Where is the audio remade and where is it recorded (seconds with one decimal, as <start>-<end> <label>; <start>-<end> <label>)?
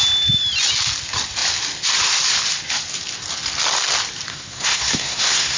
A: 0.0-4.3 recorded; 4.3-5.6 remade